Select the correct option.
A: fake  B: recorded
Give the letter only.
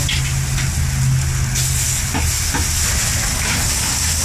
B